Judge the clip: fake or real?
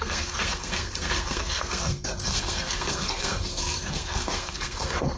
fake